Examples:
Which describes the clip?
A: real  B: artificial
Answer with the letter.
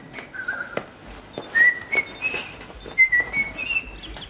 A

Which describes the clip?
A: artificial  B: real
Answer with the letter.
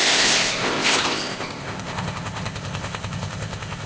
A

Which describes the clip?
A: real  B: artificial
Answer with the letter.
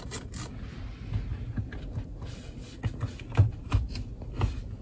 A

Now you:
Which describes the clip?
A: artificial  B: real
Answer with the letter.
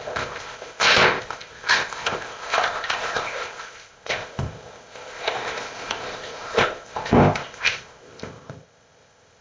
A